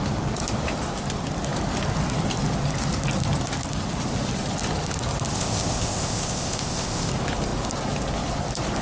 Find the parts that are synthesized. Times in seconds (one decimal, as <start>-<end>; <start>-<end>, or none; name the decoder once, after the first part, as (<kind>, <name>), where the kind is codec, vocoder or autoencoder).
5.3-7.1 (codec, ZipCodec)